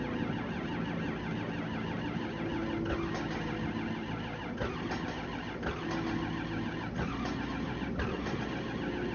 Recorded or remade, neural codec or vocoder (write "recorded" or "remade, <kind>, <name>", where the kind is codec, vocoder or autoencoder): recorded